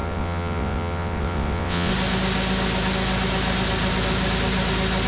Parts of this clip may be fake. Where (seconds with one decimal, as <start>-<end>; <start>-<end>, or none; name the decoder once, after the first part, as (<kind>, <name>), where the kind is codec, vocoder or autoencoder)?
0.0-1.9 (vocoder, WaveNeXt)